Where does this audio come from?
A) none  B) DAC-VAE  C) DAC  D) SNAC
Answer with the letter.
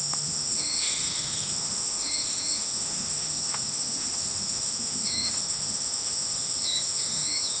B